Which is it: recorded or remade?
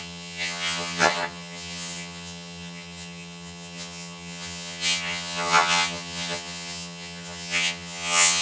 remade